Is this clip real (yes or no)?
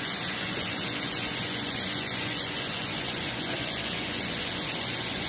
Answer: no